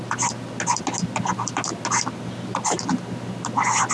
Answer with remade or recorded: recorded